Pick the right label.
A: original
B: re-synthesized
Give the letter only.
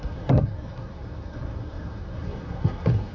B